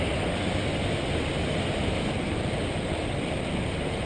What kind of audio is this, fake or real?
real